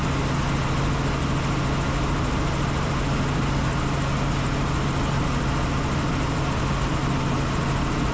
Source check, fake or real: real